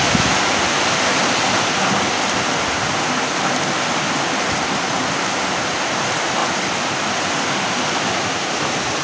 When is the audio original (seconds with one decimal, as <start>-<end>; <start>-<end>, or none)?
0.0-9.0